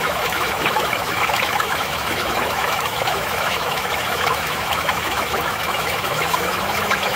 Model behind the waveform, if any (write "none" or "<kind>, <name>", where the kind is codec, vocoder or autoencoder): autoencoder, DAC-VAE